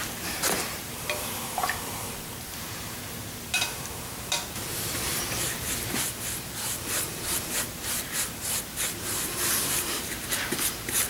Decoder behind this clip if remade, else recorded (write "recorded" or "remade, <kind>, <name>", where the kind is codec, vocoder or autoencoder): remade, vocoder, BigVGAN v2